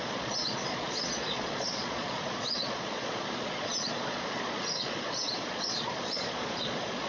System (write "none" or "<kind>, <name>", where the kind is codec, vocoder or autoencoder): vocoder, Vocos